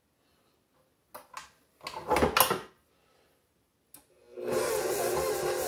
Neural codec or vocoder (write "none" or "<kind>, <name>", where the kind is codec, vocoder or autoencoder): none